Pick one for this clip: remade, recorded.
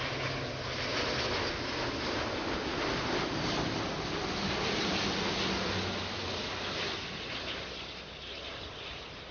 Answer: recorded